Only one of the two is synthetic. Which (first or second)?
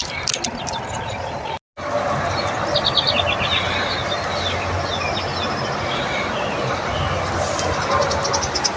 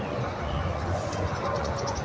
second